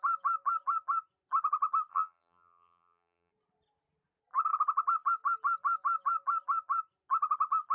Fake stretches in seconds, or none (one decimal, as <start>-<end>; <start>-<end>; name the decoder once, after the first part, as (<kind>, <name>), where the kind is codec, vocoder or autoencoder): 1.9-3.3 (vocoder, BigVGAN v2)